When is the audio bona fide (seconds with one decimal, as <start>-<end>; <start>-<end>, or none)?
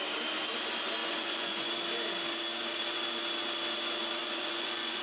0.0-1.0; 1.7-4.2